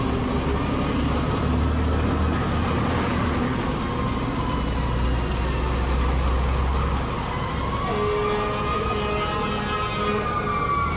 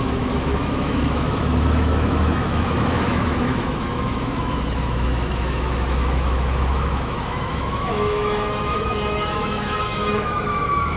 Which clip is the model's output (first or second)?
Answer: second